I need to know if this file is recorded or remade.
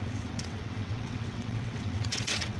remade